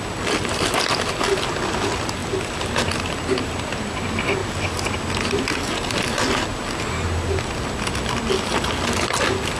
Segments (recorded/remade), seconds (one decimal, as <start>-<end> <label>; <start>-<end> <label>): 0.0-9.6 recorded